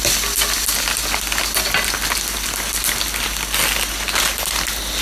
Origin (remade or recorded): recorded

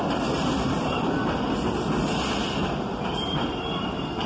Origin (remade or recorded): recorded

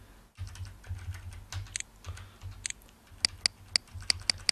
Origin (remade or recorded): recorded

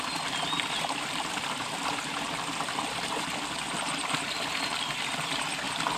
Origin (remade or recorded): recorded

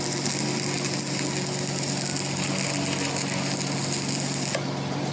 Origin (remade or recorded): recorded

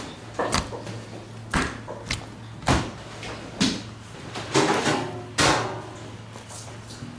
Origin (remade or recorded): recorded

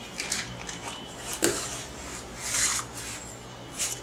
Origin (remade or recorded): remade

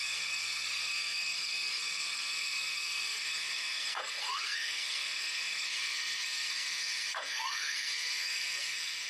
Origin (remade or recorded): remade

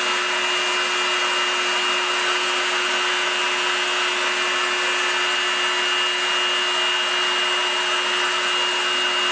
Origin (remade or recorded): recorded